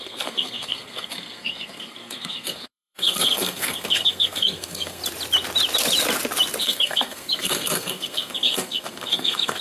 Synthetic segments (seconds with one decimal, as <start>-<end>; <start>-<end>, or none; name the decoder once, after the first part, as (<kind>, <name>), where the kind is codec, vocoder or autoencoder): 0.0-5.0 (codec, SNAC); 6.6-9.6